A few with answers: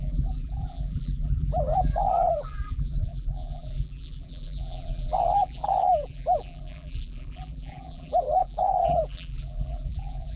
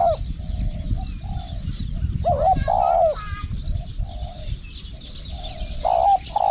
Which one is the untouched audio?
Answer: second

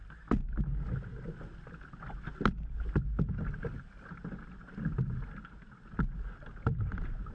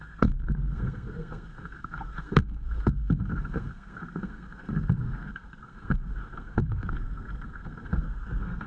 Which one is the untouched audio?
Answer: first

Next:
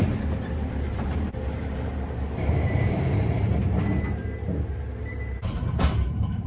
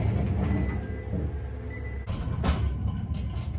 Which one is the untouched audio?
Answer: second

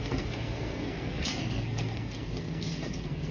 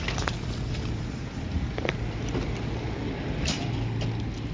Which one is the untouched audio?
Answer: second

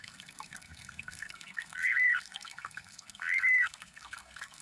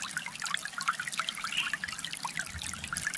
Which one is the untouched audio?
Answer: second